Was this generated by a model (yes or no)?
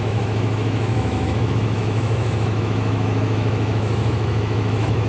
yes